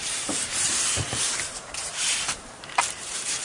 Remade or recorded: remade